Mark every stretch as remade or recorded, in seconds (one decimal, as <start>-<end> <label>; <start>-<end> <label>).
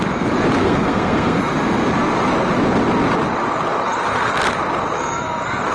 0.0-0.6 recorded; 0.6-1.4 remade; 1.4-5.7 recorded